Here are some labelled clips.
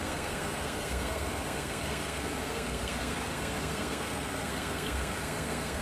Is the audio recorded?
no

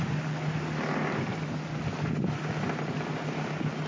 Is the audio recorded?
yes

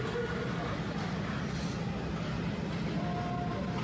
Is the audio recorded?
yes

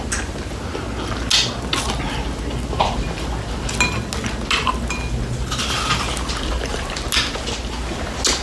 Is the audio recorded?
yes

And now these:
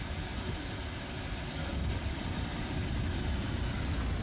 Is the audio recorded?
yes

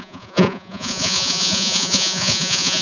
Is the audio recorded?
no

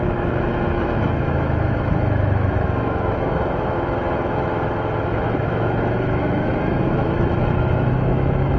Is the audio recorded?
no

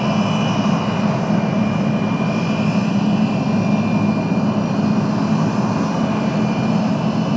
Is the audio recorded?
yes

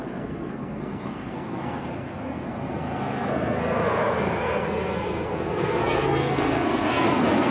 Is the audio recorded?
no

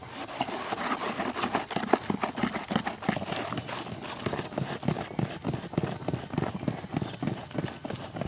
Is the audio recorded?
yes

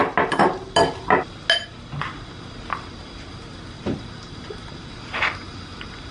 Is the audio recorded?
yes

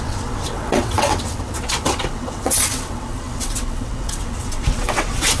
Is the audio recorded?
no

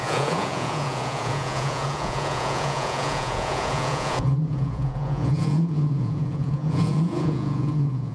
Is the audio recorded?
no